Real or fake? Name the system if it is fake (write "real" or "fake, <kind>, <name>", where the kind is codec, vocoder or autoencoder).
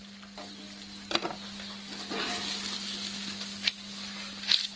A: real